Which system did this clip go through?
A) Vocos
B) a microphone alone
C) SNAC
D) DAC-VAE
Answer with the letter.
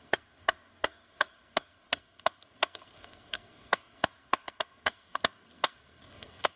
C